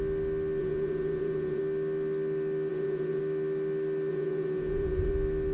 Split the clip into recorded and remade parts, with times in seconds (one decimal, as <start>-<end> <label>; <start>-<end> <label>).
0.0-0.6 recorded; 0.6-1.6 remade; 1.6-2.7 recorded; 2.7-3.2 remade; 3.2-4.1 recorded; 4.1-5.1 remade; 5.1-5.5 recorded